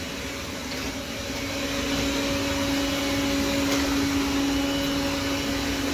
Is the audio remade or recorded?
recorded